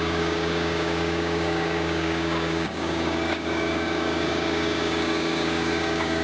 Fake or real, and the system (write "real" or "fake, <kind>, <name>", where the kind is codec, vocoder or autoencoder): fake, codec, DAC